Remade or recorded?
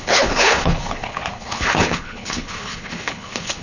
remade